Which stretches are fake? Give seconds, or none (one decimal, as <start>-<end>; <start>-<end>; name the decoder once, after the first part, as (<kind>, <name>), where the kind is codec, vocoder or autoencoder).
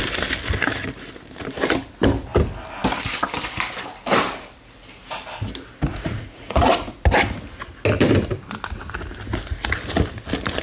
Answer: 5.9-6.7 (vocoder, Vocos)